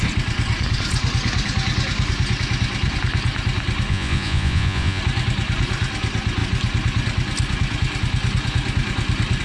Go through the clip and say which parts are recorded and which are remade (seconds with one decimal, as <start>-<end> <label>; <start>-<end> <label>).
0.0-3.9 recorded; 3.9-5.0 remade; 5.0-9.4 recorded